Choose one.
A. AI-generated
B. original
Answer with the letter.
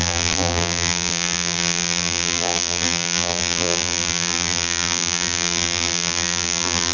A